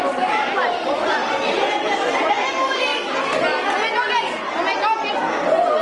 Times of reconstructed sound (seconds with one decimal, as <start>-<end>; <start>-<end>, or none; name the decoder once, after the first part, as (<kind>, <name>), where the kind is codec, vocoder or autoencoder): 1.2-2.3 (vocoder, BigVGAN v2)